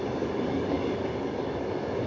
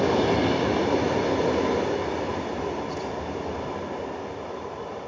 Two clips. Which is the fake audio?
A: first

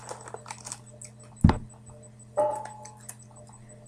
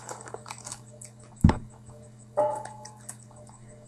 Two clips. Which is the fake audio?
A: second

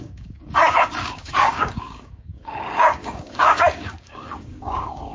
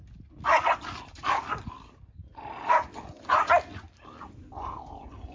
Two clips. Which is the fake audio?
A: first